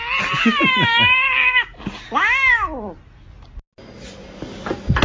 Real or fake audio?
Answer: real